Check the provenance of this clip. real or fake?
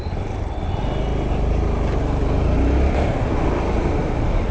real